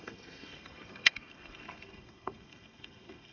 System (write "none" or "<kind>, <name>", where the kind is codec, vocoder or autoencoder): codec, SNAC